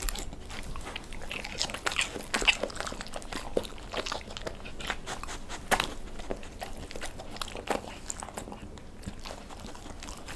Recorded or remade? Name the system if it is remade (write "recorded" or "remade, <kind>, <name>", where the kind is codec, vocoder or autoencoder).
recorded